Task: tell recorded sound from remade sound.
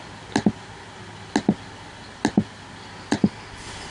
recorded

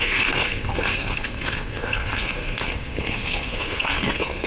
remade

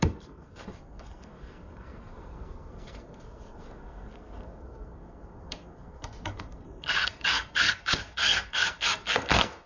remade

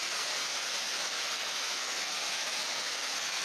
remade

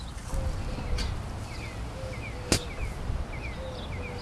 recorded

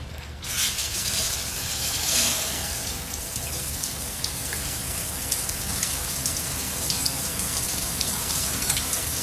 remade